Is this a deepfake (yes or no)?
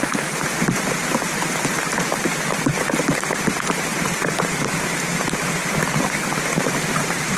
yes